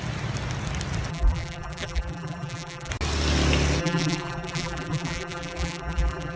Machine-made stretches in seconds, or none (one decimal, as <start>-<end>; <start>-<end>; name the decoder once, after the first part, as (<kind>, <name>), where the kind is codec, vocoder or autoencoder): 1.1-2.9 (vocoder, BigVGAN v2); 3.8-6.4